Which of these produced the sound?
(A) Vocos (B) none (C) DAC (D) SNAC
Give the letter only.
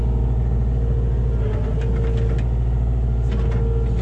B